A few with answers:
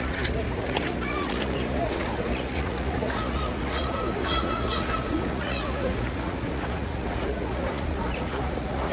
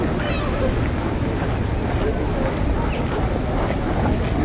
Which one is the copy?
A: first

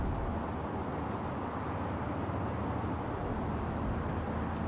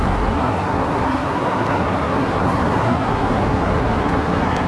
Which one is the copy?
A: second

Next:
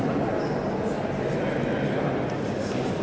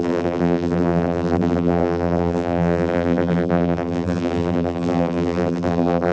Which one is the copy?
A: second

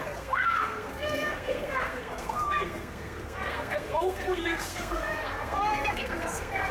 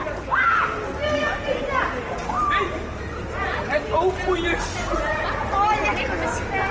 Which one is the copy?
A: first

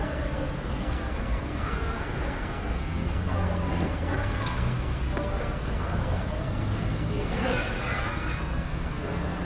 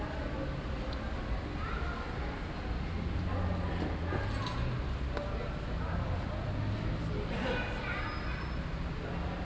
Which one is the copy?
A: first